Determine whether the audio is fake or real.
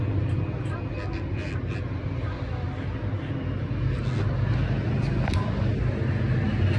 real